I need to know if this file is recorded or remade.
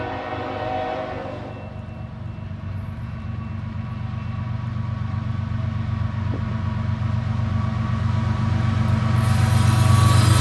recorded